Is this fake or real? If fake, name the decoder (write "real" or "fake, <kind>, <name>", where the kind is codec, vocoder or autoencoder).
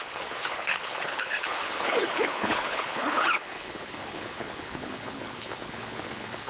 fake, codec, HILCodec